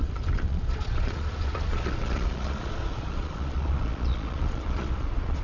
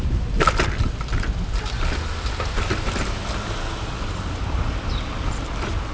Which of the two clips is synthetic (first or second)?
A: first